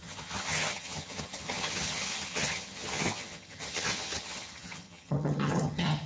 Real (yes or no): no